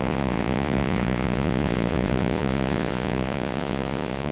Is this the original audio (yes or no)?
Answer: no